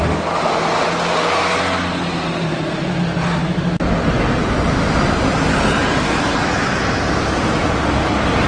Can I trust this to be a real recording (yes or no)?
yes